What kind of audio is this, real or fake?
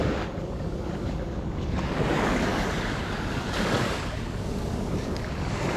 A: fake